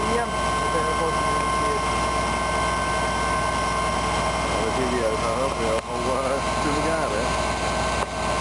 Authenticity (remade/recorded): recorded